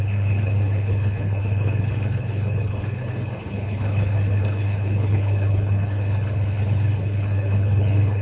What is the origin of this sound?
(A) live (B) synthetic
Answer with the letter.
B